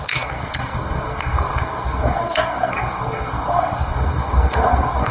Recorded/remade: remade